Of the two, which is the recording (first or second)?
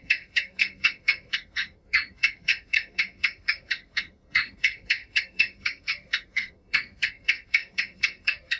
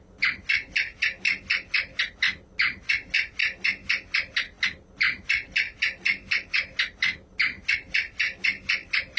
second